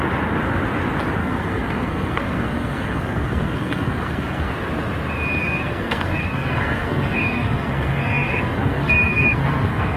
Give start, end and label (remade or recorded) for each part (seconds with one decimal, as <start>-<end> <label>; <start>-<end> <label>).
0.0-1.2 recorded; 1.2-4.5 remade; 4.5-5.4 recorded; 5.4-10.0 remade

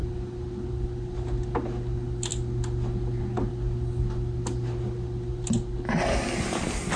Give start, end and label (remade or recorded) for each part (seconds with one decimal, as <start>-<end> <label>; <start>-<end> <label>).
0.0-7.0 recorded

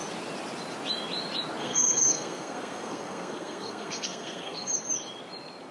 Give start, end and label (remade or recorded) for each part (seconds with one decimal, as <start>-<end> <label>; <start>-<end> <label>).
0.0-1.6 recorded; 1.6-4.7 remade; 4.7-5.7 recorded

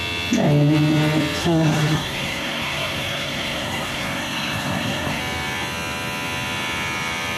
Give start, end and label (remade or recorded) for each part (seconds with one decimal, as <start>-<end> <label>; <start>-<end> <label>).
0.0-1.4 recorded; 1.4-5.2 remade; 5.2-7.4 recorded

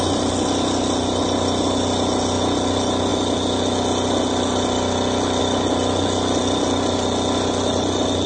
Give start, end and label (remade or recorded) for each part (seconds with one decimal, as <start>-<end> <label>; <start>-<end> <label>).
0.0-8.3 recorded

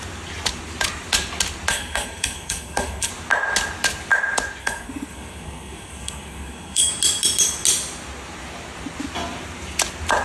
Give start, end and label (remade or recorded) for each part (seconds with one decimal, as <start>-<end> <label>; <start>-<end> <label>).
0.0-1.7 recorded; 1.7-3.1 remade; 3.1-4.6 recorded; 4.6-6.9 remade; 6.9-10.2 recorded

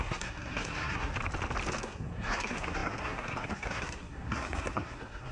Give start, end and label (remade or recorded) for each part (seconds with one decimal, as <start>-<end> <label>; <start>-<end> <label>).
0.0-1.1 remade; 1.1-1.8 recorded; 1.8-5.3 remade